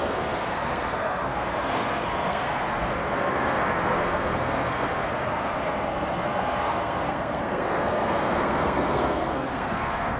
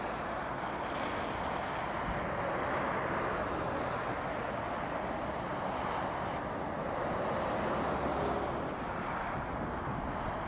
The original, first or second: second